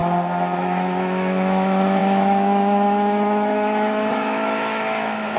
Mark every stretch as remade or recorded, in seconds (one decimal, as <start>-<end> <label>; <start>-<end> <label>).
0.0-0.6 recorded; 0.6-5.4 remade